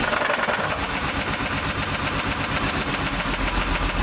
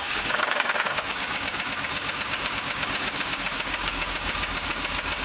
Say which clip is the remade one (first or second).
second